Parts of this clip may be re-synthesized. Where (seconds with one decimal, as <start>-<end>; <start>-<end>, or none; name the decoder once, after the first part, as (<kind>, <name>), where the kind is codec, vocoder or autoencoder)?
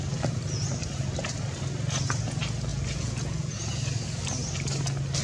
2.7-3.6 (vocoder, Vocos)